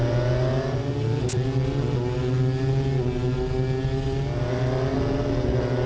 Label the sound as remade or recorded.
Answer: recorded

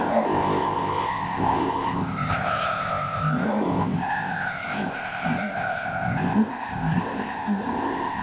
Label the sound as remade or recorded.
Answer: remade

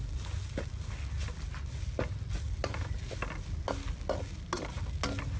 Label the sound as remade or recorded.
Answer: recorded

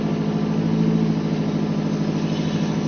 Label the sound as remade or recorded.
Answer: recorded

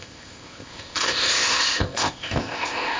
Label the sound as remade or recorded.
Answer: remade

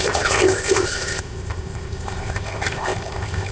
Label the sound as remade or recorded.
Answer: remade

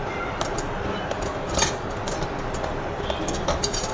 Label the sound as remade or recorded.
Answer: recorded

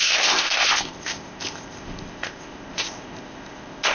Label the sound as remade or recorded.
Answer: remade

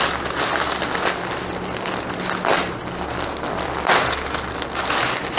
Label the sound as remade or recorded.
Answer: recorded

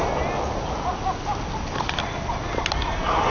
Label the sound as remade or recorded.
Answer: recorded